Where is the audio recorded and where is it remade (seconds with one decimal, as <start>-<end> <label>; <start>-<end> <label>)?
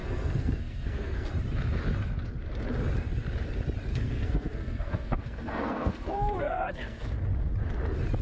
0.0-1.3 remade; 1.3-3.9 recorded; 3.9-7.1 remade; 7.1-8.2 recorded